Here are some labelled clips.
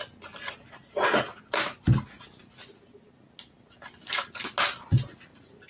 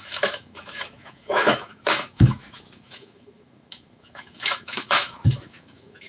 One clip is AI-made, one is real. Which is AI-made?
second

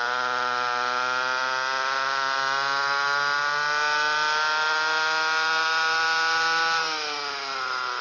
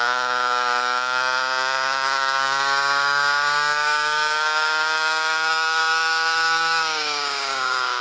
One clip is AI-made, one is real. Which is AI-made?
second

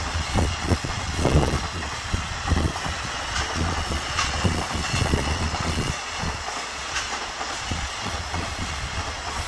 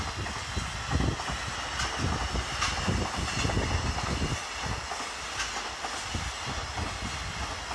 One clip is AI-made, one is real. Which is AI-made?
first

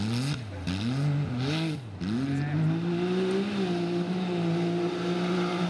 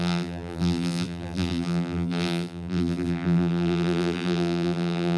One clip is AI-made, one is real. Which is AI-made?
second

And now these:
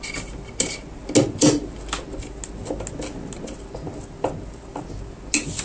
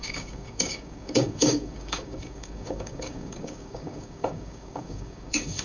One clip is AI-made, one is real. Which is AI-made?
second